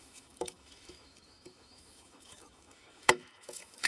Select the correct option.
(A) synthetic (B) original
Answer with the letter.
A